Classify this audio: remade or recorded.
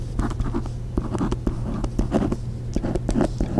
recorded